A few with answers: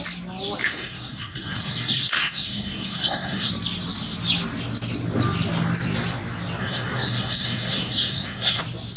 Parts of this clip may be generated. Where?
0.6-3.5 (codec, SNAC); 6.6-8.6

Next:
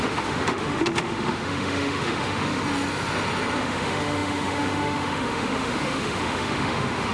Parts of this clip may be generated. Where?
0.0-2.6 (autoencoder, DAC-VAE); 3.6-7.1

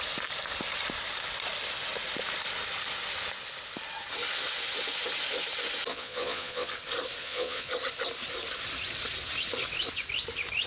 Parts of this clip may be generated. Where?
5.9-6.7 (vocoder, Vocos); 7.2-7.7

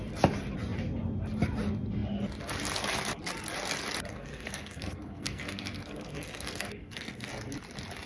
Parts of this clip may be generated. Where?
4.1-7.3 (codec, SNAC)

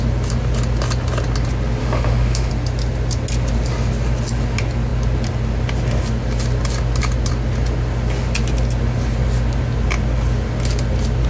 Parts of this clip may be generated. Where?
1.8-2.5 (autoencoder, DAC-VAE)

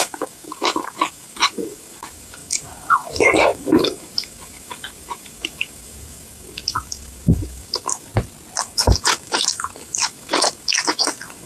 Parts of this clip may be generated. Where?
0.0-8.1 (codec, DAC); 8.6-11.5